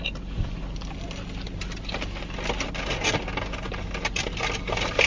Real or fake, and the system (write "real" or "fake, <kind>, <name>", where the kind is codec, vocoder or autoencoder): real